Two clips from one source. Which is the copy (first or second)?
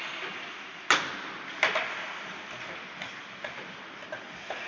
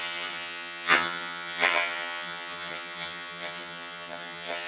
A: second